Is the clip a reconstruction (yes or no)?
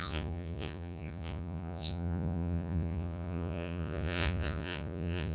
yes